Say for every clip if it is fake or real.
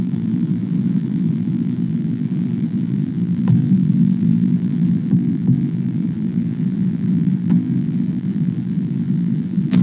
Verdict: fake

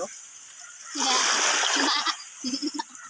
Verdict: real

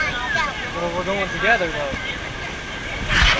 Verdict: real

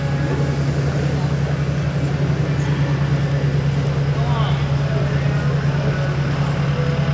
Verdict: real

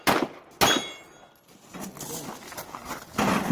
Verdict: real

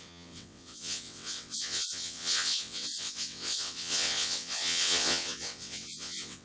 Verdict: fake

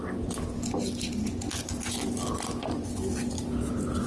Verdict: real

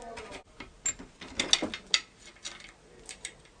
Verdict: real